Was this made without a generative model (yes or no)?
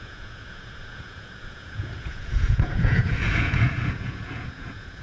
no